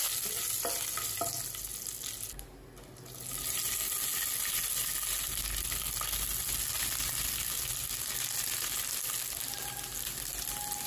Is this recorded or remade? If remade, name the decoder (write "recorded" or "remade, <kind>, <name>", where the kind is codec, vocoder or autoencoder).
recorded